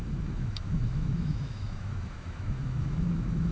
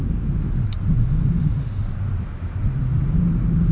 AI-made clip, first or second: first